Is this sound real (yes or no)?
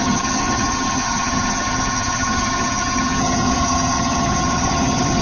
no